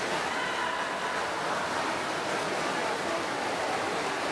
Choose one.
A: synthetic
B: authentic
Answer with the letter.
B